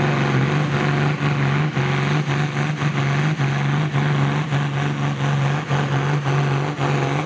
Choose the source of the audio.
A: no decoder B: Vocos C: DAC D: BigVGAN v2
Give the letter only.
A